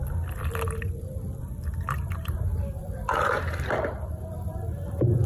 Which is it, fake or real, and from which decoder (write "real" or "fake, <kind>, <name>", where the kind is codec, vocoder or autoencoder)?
fake, vocoder, BigVGAN v2